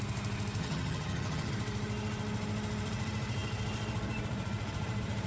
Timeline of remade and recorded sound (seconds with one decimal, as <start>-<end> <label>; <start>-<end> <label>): 0.0-0.6 recorded; 0.6-1.5 remade; 1.5-5.3 recorded